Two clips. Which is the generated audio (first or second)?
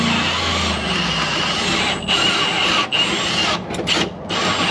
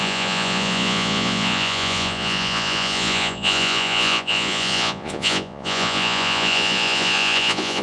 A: second